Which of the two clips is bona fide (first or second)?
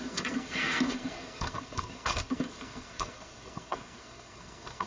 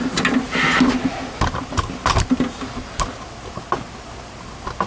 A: second